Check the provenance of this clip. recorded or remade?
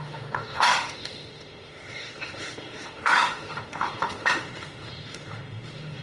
remade